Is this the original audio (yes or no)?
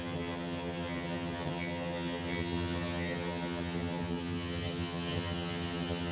no